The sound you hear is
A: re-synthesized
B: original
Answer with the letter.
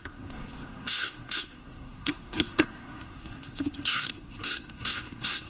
A